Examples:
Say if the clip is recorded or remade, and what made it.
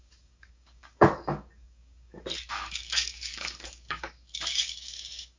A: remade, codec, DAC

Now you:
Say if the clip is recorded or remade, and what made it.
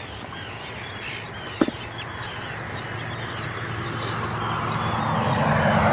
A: recorded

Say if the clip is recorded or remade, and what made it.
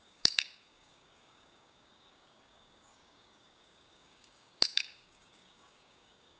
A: remade, codec, DAC